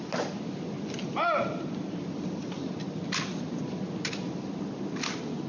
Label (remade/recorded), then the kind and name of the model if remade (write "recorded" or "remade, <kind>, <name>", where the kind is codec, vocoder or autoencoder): recorded